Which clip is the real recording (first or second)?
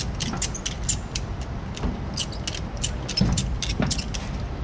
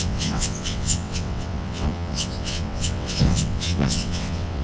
first